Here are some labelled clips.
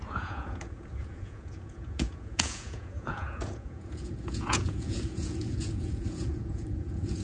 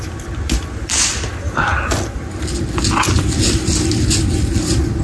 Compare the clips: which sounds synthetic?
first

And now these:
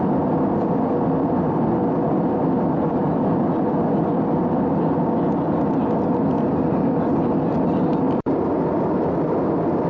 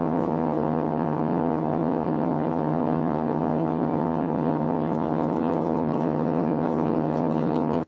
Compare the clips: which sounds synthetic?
second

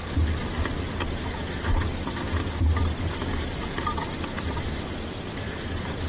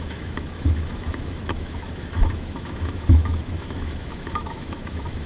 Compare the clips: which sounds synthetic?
second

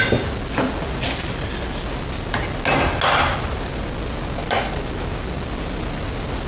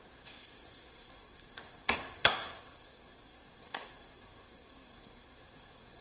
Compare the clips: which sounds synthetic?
second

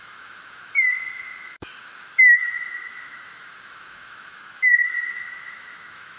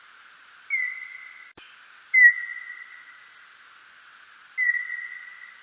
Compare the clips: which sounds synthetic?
first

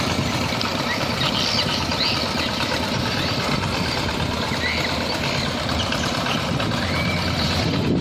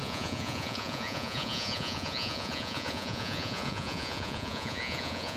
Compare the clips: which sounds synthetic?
second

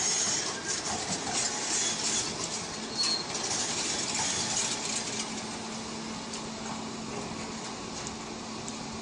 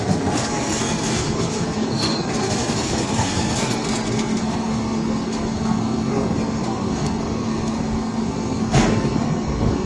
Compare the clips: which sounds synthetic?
second